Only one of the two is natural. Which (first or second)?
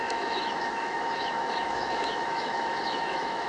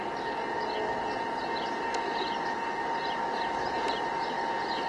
second